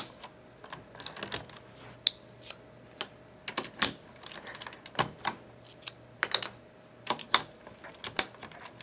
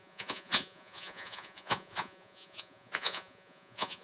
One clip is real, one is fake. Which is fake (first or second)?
second